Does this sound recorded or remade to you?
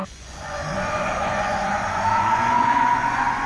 remade